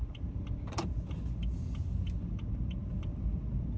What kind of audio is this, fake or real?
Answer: real